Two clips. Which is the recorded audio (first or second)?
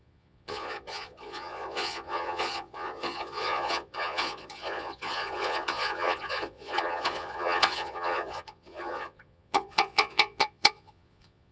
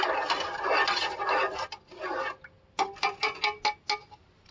second